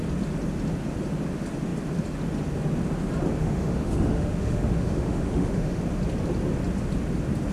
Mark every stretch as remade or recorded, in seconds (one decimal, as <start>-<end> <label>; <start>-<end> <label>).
0.0-3.4 recorded; 3.4-5.8 remade; 5.8-7.5 recorded